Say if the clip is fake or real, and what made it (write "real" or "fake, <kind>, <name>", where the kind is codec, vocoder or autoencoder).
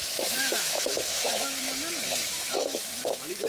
fake, autoencoder, DAC-VAE